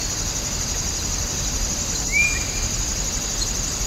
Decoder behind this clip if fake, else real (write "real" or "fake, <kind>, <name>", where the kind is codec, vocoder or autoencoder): real